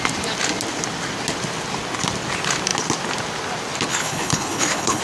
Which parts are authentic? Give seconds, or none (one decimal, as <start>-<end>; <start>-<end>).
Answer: 0.0-3.9